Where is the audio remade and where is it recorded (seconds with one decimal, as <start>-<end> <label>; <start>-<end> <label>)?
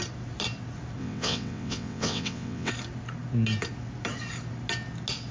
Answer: 0.0-1.0 recorded; 1.0-2.7 remade; 2.7-5.3 recorded